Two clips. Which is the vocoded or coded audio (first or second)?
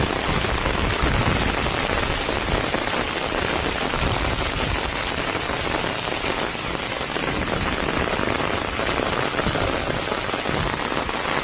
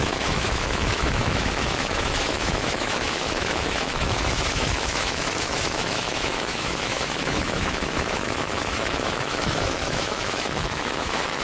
second